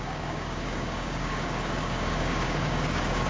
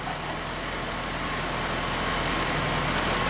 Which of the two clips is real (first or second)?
second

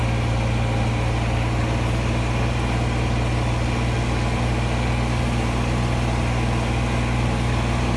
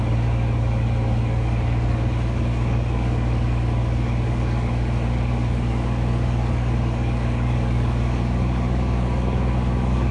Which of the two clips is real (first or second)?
first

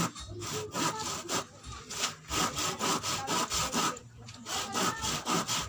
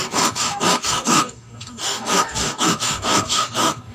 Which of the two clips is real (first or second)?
first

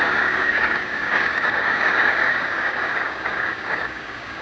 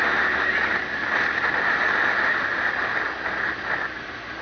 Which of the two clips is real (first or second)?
second